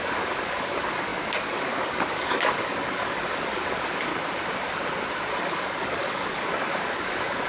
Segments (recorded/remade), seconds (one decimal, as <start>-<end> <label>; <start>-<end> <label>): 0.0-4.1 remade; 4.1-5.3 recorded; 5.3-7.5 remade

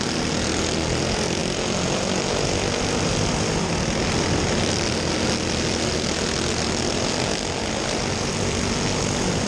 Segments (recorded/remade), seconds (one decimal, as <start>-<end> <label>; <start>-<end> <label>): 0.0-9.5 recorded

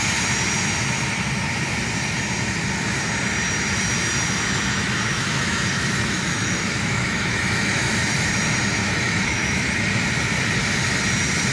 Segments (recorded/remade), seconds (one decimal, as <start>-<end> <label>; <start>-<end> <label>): 0.0-5.1 recorded; 5.1-7.9 remade; 7.9-8.8 recorded; 8.8-9.7 remade; 9.7-11.5 recorded